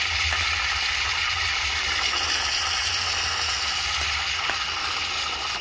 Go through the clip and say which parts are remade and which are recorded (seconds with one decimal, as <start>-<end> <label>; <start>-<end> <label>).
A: 0.0-5.6 recorded